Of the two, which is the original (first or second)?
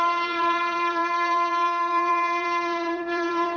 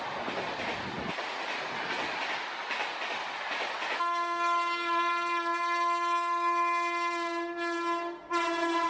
second